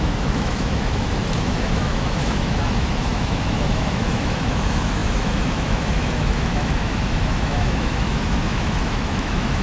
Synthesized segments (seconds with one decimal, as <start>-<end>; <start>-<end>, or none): 0.0-9.6